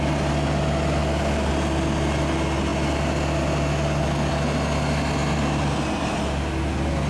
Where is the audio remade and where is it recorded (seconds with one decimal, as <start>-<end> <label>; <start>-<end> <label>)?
0.0-7.1 recorded